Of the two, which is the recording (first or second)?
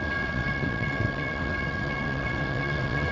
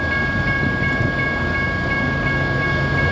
second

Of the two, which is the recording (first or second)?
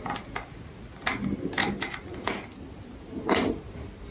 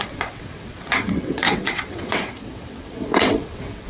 first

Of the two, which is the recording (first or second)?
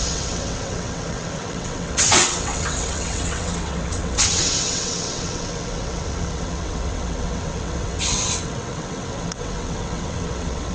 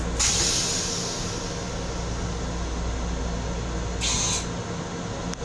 second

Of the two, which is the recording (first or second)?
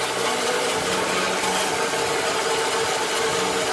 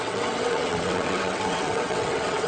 first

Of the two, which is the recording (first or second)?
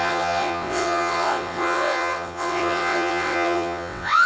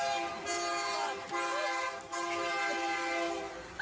second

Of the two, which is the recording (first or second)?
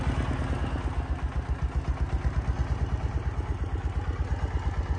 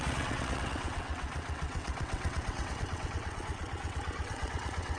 first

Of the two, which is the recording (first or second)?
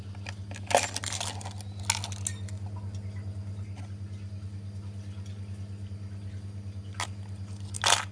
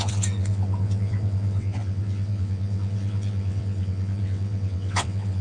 first